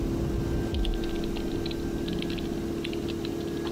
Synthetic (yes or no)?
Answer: no